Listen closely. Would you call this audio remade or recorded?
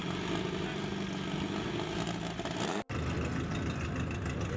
recorded